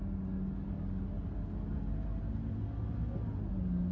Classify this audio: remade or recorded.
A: recorded